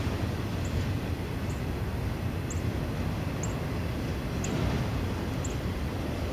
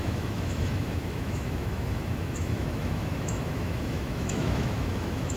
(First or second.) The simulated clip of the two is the second